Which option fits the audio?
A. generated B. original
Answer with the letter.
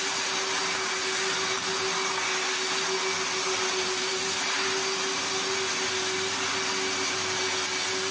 B